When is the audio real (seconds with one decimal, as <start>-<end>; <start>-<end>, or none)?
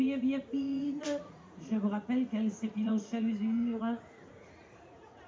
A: none